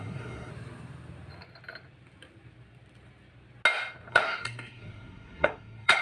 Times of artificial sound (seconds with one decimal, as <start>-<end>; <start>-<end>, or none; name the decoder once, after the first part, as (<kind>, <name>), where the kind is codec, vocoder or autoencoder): 0.0-0.5 (codec, SNAC); 4.1-6.0